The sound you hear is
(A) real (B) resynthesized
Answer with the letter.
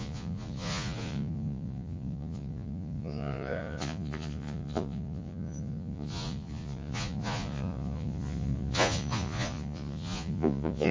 B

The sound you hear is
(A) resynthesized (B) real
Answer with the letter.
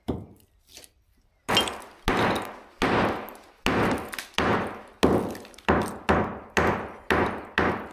B